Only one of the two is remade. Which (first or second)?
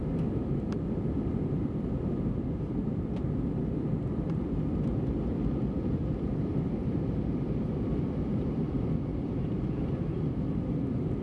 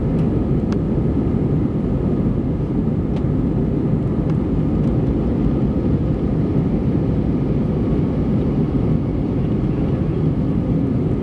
first